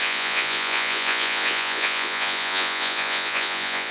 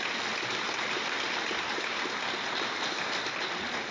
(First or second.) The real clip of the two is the second